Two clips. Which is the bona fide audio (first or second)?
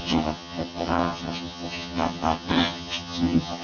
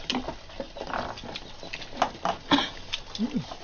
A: second